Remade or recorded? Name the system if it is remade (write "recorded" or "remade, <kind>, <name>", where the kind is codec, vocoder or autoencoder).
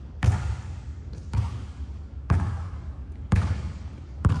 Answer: remade, codec, DAC